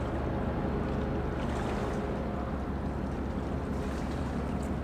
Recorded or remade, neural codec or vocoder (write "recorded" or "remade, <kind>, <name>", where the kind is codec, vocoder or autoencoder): recorded